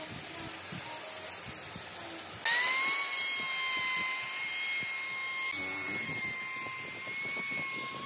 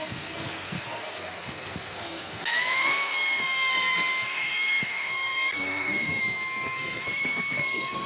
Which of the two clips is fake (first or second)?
second